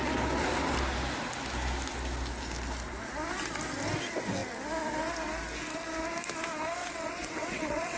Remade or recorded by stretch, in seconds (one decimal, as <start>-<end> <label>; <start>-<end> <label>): 0.0-6.8 recorded; 6.8-8.0 remade